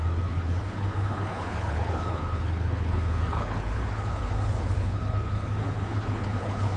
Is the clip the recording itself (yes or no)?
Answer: no